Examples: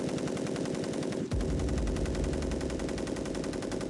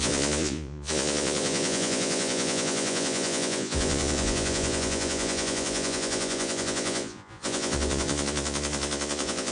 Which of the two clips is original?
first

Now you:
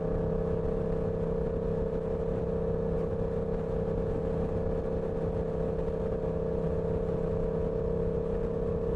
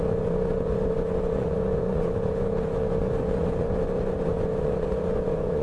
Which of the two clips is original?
first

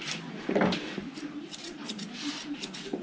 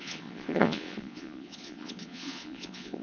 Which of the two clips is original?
first